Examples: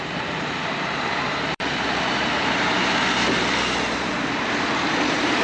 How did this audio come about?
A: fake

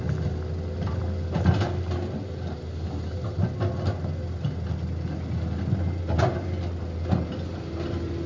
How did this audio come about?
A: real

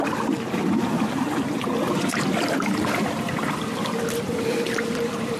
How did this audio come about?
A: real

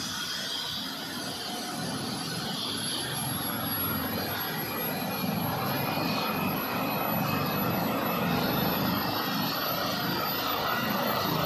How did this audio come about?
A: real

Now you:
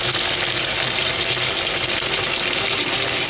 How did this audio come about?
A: real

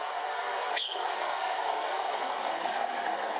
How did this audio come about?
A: fake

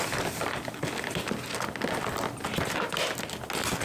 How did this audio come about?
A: real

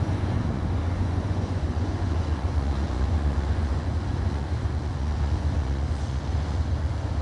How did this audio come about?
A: fake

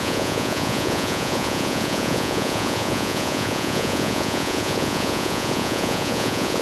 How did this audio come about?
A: fake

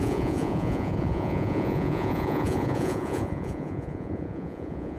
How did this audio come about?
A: fake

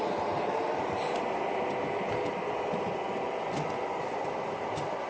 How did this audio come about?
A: real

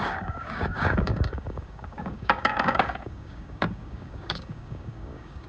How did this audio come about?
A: fake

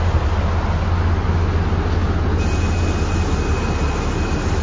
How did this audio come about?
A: real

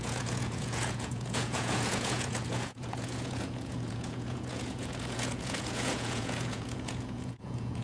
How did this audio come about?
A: fake